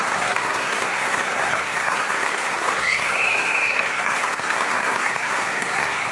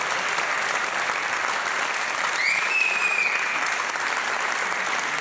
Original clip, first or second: second